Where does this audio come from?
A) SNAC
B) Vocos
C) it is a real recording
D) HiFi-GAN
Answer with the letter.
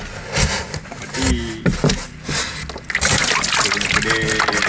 C